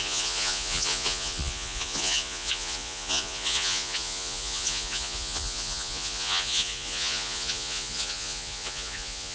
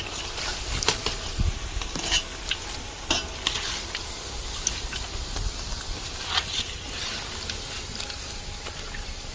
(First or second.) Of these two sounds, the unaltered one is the second